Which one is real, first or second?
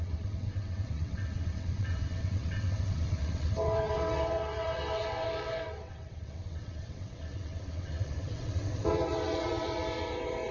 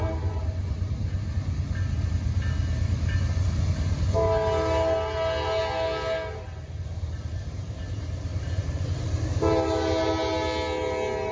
second